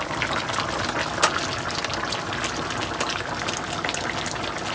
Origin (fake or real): real